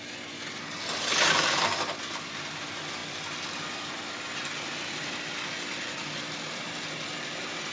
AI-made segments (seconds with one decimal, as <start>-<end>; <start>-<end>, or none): none